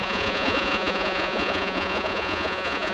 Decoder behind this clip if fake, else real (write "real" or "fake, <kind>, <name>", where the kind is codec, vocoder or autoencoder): fake, vocoder, Vocos